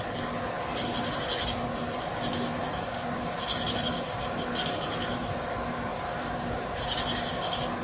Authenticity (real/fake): real